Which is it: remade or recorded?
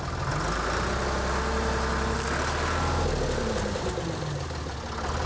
recorded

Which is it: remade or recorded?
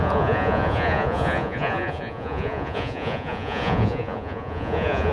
remade